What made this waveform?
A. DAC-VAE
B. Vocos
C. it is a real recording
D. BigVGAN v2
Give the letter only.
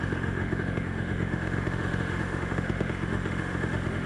A